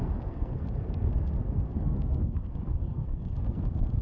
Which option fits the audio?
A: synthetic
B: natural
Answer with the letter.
A